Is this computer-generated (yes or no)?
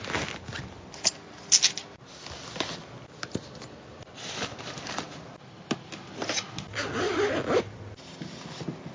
no